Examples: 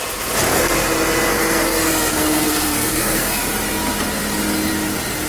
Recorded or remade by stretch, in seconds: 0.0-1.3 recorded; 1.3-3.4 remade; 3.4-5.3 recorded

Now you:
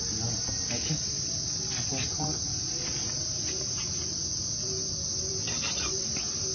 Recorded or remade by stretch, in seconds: 0.0-2.1 recorded; 2.1-6.0 remade; 6.0-6.5 recorded

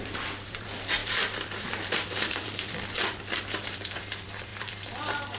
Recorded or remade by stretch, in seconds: 0.0-5.4 remade

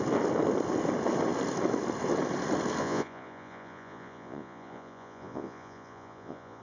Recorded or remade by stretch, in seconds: 0.0-2.8 recorded; 2.8-6.6 remade

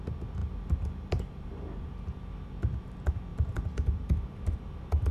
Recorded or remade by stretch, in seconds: 0.0-0.4 recorded; 0.4-1.5 remade; 1.5-3.3 recorded; 3.3-5.1 remade